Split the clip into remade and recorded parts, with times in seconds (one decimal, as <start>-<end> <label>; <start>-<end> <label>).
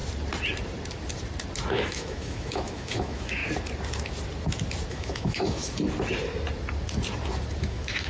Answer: 0.0-1.7 recorded; 1.7-3.4 remade; 3.4-4.9 recorded; 4.9-5.6 remade; 5.6-7.6 recorded; 7.6-8.1 remade